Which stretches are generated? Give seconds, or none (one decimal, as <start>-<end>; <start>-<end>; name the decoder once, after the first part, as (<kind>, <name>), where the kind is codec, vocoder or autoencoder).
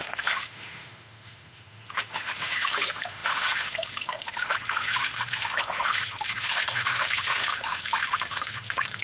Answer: 0.0-9.0 (autoencoder, DAC-VAE)